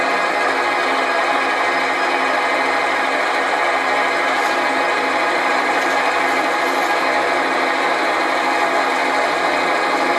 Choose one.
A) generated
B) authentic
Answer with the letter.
B